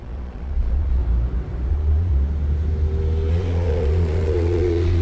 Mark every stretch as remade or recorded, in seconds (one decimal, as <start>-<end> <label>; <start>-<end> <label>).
0.0-1.0 remade; 1.0-1.7 recorded; 1.7-2.1 remade; 2.1-3.3 recorded; 3.3-5.0 remade

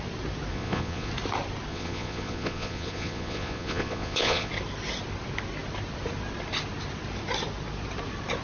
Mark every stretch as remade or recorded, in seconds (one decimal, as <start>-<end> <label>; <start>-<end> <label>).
0.0-0.5 recorded; 0.5-1.1 remade; 1.1-1.7 recorded; 1.7-4.5 remade; 4.5-8.4 recorded

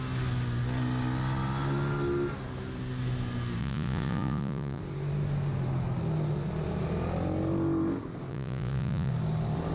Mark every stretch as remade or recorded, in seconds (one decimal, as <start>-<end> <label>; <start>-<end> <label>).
0.0-3.6 recorded; 3.6-4.8 remade; 4.8-8.3 recorded; 8.3-9.1 remade; 9.1-9.7 recorded

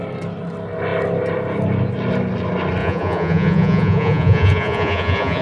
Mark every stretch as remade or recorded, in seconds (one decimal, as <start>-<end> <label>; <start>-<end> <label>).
0.0-2.8 recorded; 2.8-5.4 remade

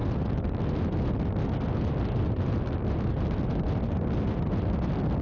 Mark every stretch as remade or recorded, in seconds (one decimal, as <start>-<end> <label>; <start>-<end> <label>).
0.0-5.2 recorded

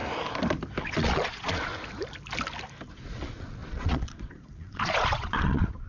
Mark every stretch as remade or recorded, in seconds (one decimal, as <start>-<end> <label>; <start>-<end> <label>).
0.0-0.8 recorded; 0.8-1.7 remade; 1.7-2.9 recorded; 2.9-5.9 remade

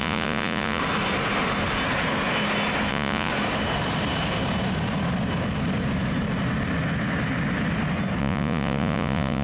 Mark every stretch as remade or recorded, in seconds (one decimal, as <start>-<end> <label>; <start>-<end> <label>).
0.0-0.8 remade; 0.8-2.9 recorded; 2.9-3.3 remade; 3.3-8.2 recorded; 8.2-9.4 remade

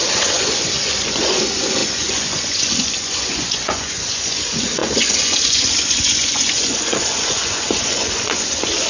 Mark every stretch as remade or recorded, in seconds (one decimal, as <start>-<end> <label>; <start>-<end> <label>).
0.0-8.9 remade